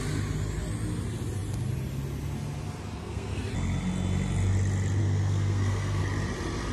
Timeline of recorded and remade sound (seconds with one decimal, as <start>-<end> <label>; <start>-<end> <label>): 0.0-3.0 recorded; 3.0-3.5 remade; 3.5-5.0 recorded; 5.0-6.0 remade; 6.0-6.7 recorded